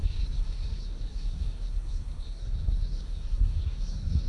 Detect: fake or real fake